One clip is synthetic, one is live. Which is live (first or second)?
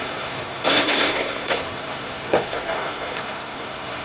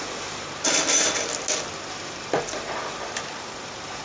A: second